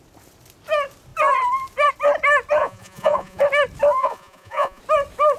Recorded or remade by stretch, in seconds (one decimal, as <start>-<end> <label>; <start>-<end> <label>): 0.0-2.6 recorded; 2.6-3.4 remade; 3.4-4.0 recorded; 4.0-4.8 remade; 4.8-5.4 recorded